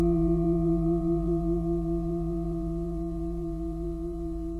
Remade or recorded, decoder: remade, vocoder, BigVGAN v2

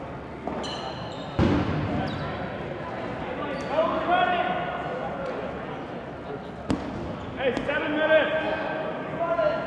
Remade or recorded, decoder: recorded